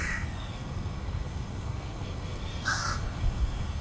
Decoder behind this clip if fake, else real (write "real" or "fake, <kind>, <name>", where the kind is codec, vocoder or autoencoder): fake, codec, SNAC